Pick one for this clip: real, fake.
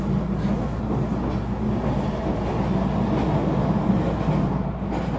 real